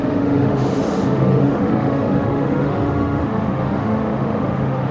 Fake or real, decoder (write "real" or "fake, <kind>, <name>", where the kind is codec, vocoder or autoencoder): fake, autoencoder, DAC-VAE